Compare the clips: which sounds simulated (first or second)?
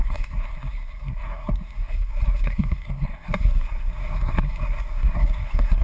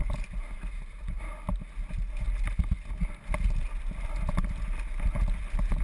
first